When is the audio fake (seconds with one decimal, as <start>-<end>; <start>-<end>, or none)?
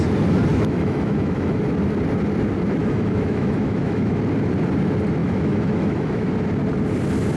0.5-1.6; 2.8-4.2; 5.2-6.3